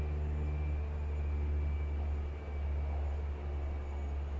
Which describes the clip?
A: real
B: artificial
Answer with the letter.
A